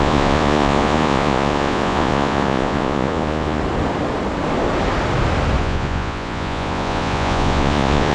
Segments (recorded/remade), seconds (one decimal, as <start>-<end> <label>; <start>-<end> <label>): 0.0-3.6 remade; 3.6-5.6 recorded; 5.6-8.1 remade